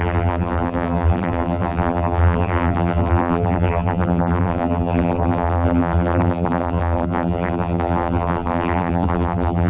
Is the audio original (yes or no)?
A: no